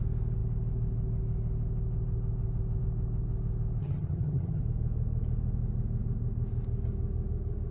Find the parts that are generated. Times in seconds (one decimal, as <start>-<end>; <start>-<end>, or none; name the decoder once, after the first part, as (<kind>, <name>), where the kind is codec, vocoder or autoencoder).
3.8-4.6 (vocoder, HiFi-GAN)